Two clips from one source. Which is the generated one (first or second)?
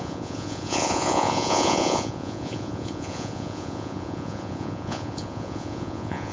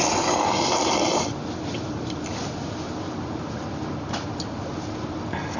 first